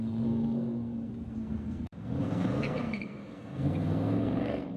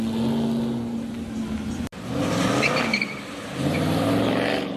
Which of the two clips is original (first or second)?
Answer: second